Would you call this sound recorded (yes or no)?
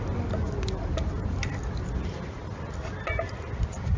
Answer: yes